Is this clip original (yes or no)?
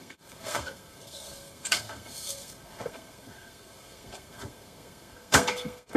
no